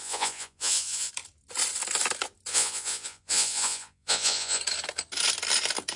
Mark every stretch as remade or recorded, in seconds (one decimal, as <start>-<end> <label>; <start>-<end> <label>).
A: 0.0-1.1 remade; 1.1-2.5 recorded; 2.5-4.6 remade; 4.6-6.0 recorded